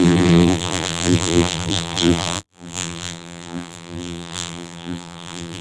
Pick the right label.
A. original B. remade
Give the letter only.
B